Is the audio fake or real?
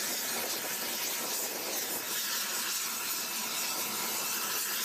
real